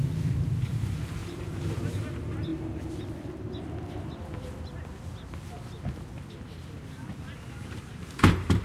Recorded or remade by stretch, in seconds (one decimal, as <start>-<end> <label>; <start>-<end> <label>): 0.0-0.6 recorded; 0.6-2.5 remade; 2.5-7.5 recorded; 7.5-8.6 remade